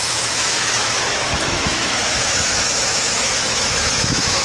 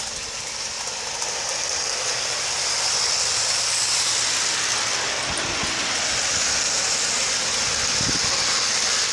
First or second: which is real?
second